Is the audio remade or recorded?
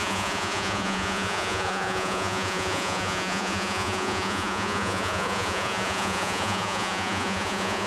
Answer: remade